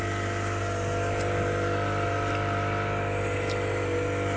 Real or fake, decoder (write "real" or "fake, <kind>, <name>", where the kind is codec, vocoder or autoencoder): real